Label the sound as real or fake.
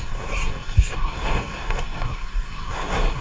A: fake